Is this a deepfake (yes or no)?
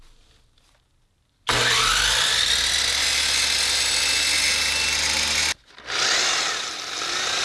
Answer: no